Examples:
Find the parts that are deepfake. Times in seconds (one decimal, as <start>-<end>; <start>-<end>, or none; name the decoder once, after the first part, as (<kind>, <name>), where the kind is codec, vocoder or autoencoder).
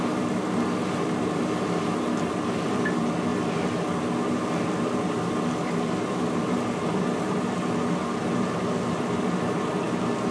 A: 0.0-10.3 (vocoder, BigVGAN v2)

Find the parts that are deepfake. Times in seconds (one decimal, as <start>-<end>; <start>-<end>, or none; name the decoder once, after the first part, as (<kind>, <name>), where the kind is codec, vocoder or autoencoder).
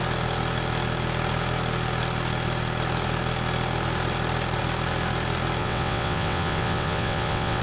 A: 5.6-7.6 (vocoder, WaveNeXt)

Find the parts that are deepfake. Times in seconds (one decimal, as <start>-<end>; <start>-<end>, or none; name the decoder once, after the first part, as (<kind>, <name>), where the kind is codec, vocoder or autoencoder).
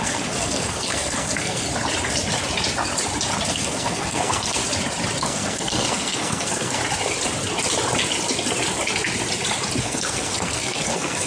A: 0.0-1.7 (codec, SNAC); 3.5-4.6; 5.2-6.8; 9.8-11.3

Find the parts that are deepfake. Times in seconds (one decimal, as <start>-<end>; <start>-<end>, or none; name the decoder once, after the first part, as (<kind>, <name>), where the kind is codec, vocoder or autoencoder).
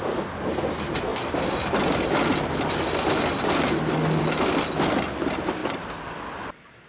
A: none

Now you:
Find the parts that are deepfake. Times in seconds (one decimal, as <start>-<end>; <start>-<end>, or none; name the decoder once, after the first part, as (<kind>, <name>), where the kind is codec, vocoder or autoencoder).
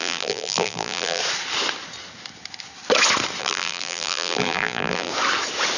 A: 0.0-1.2 (vocoder, BigVGAN v2); 3.4-5.1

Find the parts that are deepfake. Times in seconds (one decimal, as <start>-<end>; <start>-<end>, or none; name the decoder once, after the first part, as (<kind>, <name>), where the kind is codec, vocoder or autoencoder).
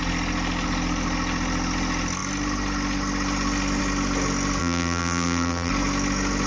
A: 4.6-5.7 (vocoder, BigVGAN v2)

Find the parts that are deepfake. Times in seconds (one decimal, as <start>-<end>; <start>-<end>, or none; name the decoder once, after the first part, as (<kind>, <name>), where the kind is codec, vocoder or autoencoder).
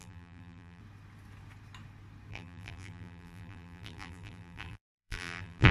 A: 0.0-0.8 (vocoder, BigVGAN v2); 2.3-5.7